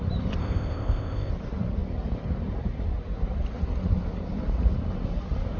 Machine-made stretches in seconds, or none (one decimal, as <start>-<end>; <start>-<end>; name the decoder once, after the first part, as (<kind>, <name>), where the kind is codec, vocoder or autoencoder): 0.4-1.3 (codec, ZipCodec)